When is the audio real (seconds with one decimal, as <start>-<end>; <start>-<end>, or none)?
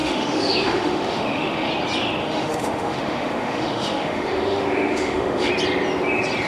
1.7-2.2; 5.5-6.5